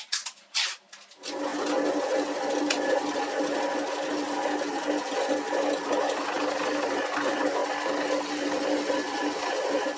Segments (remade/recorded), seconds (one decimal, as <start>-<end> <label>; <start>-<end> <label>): 0.0-10.0 recorded